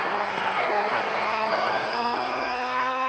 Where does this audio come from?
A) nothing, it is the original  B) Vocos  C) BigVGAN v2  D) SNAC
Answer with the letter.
D